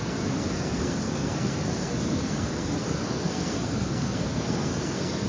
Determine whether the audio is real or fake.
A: fake